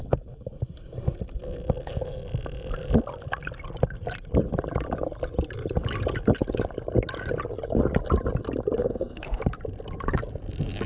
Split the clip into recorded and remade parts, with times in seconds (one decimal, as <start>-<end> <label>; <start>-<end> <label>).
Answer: 0.0-8.8 recorded; 8.8-9.4 remade; 9.4-10.9 recorded